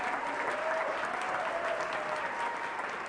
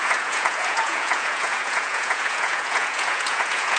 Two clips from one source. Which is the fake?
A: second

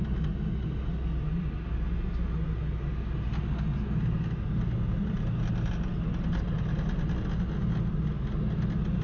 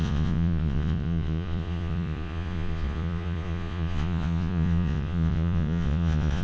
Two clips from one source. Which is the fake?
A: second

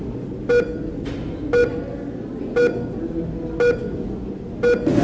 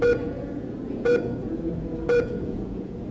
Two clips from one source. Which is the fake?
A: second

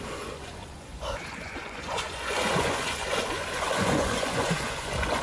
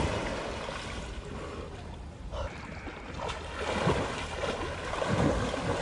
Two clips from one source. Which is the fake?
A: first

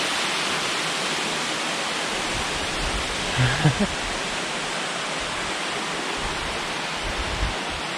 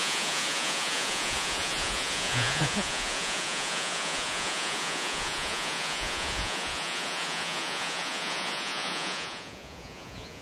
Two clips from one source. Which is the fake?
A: second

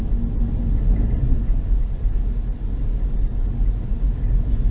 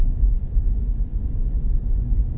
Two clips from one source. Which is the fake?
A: second